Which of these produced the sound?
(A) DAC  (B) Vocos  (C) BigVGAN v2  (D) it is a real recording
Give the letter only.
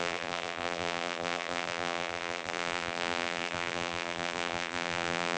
C